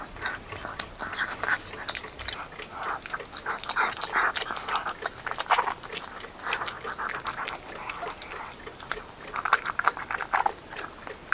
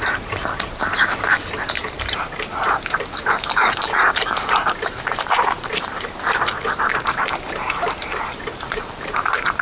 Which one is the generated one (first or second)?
second